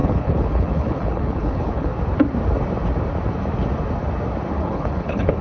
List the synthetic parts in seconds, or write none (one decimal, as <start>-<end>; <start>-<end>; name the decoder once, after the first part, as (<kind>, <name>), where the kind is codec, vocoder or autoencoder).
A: 0.0-1.9 (codec, HILCodec); 4.5-5.4